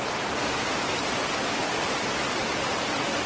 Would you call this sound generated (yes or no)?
no